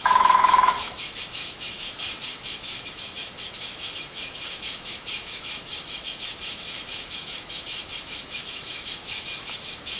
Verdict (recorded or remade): remade